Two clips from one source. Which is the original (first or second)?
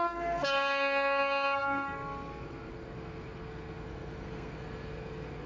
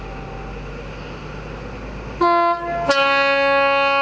second